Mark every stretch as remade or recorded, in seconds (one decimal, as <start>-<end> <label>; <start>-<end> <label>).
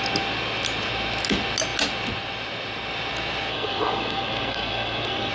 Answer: 0.0-3.5 recorded; 3.5-5.3 remade